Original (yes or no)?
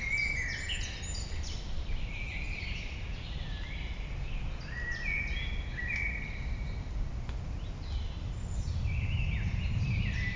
yes